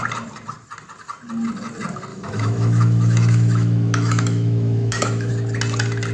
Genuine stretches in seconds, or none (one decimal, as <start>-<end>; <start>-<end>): 0.0-2.1; 5.3-6.1